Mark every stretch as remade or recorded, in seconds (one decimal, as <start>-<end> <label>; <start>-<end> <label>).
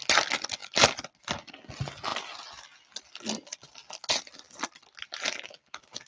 0.0-6.1 recorded